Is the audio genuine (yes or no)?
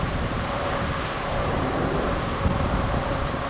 no